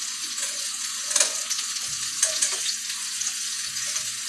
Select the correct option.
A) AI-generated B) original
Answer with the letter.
A